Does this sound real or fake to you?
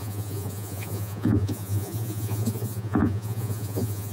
fake